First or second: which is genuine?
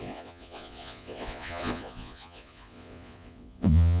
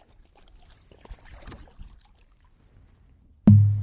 second